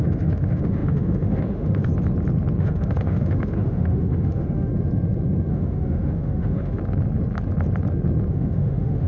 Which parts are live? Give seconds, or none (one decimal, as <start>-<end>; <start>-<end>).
1.9-2.6; 4.7-5.5; 6.8-8.3